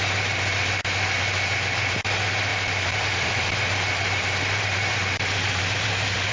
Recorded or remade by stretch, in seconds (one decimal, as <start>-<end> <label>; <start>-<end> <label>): 0.0-2.5 recorded; 2.5-6.3 remade